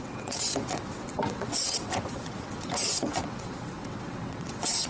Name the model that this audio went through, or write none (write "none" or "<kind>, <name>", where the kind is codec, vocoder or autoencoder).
vocoder, WaveNeXt